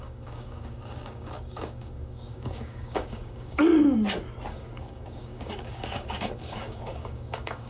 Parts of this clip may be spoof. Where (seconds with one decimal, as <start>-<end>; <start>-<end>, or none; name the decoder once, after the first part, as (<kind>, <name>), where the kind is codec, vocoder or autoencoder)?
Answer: 0.0-3.7 (codec, DAC); 4.5-7.7